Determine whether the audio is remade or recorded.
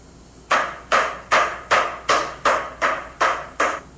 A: recorded